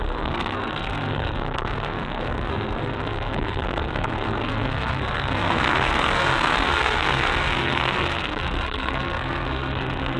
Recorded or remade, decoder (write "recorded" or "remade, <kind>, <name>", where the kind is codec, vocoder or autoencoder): remade, codec, SNAC